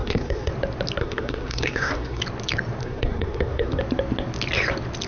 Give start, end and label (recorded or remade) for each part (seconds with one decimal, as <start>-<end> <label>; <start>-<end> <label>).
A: 0.0-0.5 remade; 0.5-1.0 recorded; 1.0-2.2 remade; 2.2-2.8 recorded; 2.8-3.8 remade; 3.8-5.1 recorded